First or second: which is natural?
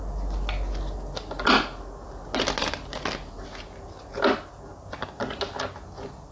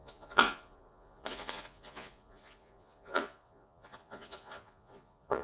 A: first